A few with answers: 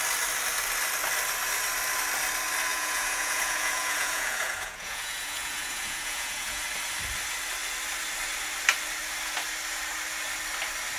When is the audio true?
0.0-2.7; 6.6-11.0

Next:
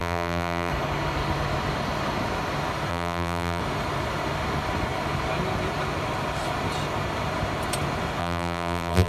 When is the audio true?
0.7-2.9; 3.6-8.2